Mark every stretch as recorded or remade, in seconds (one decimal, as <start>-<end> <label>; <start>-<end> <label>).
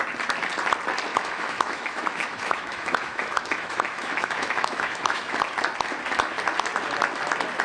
0.0-1.1 recorded; 1.1-5.4 remade; 5.4-7.6 recorded